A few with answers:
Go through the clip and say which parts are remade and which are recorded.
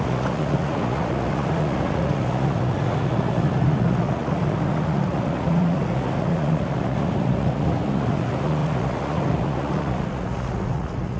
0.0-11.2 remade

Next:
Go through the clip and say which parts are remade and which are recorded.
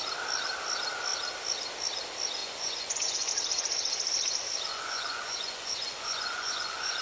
0.0-2.4 recorded; 2.4-3.3 remade; 3.3-4.7 recorded; 4.7-7.0 remade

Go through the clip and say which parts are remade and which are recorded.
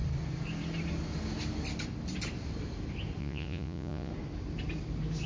0.0-3.2 recorded; 3.2-4.1 remade; 4.1-5.3 recorded